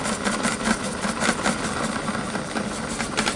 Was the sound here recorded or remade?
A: recorded